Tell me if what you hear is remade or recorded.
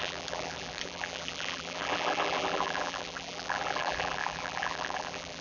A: remade